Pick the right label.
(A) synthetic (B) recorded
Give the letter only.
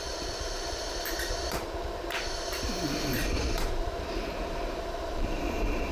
A